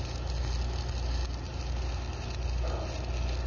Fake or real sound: real